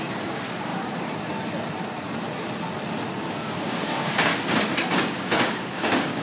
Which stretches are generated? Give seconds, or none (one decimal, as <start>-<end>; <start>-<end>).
0.0-0.7; 3.3-4.3; 5.0-6.2

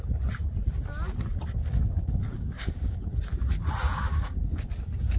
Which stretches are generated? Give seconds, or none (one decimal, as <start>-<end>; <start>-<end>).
1.6-3.0; 4.1-4.7

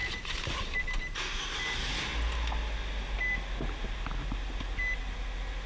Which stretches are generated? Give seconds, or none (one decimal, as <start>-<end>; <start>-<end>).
none

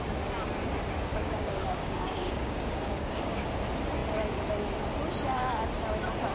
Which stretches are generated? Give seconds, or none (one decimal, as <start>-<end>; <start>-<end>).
1.1-3.4

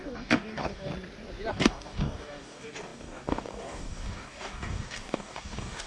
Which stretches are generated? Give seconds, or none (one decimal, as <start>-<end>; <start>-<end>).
0.0-0.9; 1.5-5.9

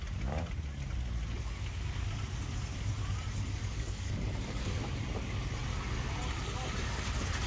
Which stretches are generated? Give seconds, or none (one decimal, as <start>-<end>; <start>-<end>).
3.6-4.2

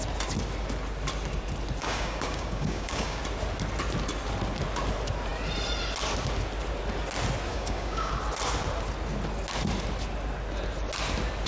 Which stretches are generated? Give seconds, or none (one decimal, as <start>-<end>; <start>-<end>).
1.8-3.2; 7.5-8.1